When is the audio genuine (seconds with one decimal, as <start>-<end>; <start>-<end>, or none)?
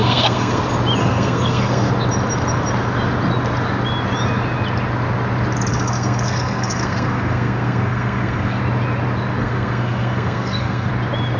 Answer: 0.6-1.0; 1.9-5.7; 8.6-9.4; 10.9-11.4